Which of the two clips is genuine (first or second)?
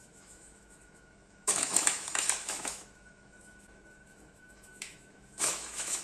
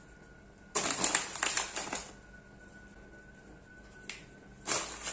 second